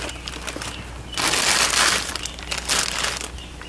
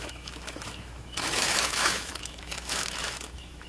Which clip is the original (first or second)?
first